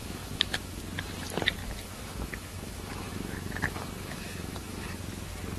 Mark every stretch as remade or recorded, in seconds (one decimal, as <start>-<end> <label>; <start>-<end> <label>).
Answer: 0.0-0.8 remade; 0.8-1.6 recorded; 1.6-5.0 remade; 5.0-5.6 recorded